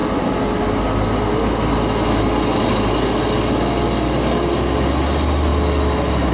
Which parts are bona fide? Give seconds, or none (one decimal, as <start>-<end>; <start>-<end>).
0.0-6.3